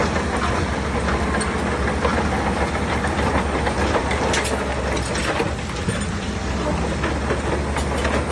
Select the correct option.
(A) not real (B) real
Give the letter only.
B